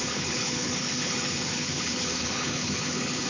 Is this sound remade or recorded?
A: remade